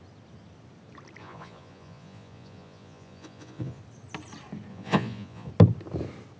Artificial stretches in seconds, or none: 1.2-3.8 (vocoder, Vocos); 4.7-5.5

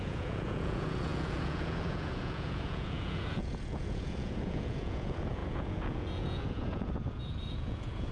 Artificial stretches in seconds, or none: 0.0-8.1 (vocoder, Vocos)

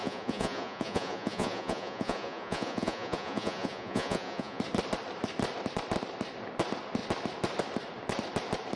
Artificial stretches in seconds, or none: 0.0-4.6 (vocoder, Vocos)

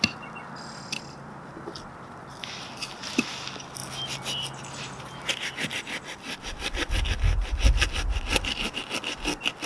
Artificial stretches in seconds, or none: none

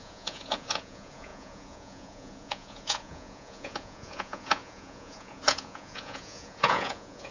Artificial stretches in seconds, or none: 0.0-7.3 (vocoder, Vocos)

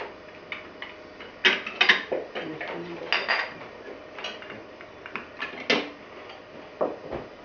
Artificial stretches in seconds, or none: none